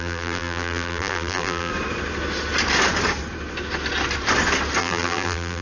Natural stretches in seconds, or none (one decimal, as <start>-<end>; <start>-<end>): 1.7-4.8